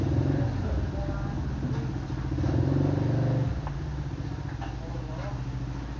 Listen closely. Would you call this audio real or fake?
real